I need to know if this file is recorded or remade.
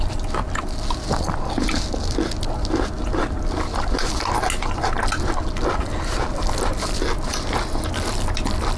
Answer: recorded